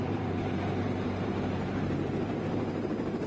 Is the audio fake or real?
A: fake